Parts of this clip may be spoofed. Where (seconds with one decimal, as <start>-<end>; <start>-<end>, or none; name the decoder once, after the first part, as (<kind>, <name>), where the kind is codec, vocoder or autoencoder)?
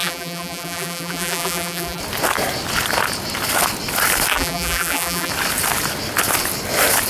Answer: 0.0-2.0 (vocoder, BigVGAN v2); 4.3-5.3